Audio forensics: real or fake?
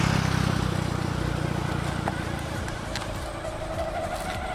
real